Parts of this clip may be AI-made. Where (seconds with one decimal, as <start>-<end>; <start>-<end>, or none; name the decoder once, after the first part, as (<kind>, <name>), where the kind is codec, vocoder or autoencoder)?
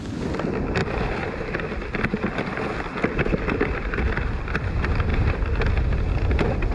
none